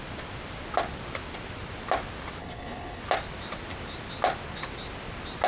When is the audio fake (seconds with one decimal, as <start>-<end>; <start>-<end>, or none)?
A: 2.4-3.0